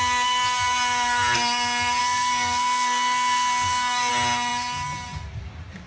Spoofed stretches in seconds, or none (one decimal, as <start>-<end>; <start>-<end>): 2.0-4.1